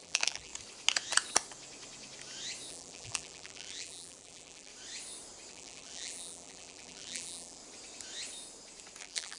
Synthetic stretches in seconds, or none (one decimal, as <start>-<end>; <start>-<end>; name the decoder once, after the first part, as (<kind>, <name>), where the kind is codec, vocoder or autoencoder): 0.0-0.5 (vocoder, BigVGAN v2); 2.7-4.7; 5.5-7.6; 9.0-9.4